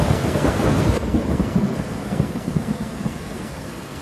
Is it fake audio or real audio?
fake